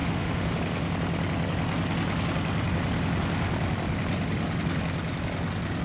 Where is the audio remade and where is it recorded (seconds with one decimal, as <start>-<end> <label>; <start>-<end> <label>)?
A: 0.0-0.5 remade; 0.5-5.8 recorded